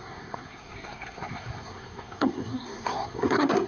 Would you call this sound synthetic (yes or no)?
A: yes